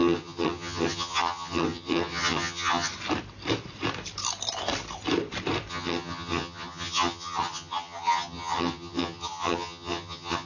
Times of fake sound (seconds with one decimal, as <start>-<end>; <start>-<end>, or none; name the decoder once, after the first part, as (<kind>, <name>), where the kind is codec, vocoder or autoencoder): 0.0-2.9 (vocoder, HiFi-GAN); 5.7-10.5

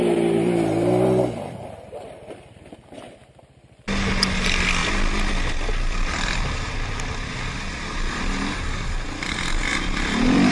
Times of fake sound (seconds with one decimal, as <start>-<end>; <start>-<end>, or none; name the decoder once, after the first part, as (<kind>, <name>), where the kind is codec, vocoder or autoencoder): 4.8-6.7 (vocoder, BigVGAN v2); 9.7-10.5

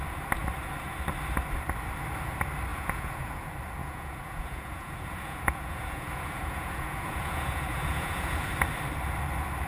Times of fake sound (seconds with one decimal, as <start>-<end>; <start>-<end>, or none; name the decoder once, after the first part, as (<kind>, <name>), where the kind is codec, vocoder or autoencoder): 2.7-3.4 (vocoder, Vocos); 3.8-8.5

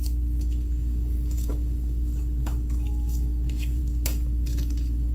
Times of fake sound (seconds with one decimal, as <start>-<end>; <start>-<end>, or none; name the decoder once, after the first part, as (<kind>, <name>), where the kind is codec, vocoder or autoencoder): 0.0-5.1 (codec, DAC)

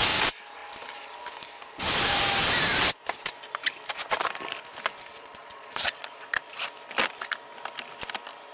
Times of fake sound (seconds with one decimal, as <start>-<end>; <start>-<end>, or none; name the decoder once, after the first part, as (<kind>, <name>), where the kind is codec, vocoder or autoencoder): 5.1-6.6 (vocoder, Vocos)

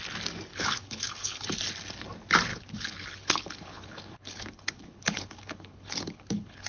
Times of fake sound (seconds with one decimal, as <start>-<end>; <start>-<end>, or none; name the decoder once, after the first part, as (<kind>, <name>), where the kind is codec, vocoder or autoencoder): 0.5-1.6 (codec, HILCodec); 2.5-6.7